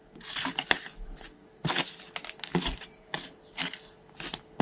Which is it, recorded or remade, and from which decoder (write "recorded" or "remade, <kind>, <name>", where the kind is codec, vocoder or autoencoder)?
recorded